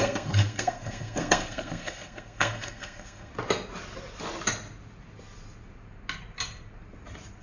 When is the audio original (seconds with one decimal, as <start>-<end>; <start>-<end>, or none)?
3.3-7.4